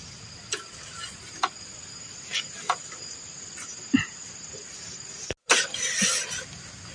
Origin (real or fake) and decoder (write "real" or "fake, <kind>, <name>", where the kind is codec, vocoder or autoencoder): real